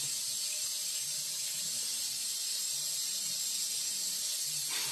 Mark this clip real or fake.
real